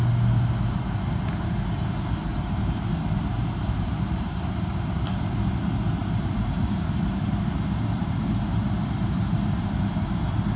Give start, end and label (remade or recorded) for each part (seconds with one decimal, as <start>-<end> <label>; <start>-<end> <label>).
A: 0.0-2.3 recorded; 2.3-5.1 remade; 5.1-6.0 recorded; 6.0-7.2 remade; 7.2-8.0 recorded; 8.0-10.2 remade; 10.2-10.6 recorded